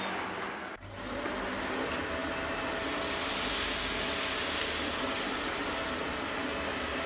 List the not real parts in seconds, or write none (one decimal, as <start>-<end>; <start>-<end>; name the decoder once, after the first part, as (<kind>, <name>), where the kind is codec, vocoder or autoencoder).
none